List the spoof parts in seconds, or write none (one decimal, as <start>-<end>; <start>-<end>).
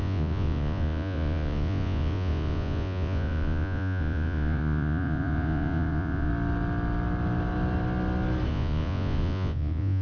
0.0-6.3; 8.5-10.0